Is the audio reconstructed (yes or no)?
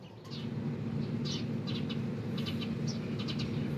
no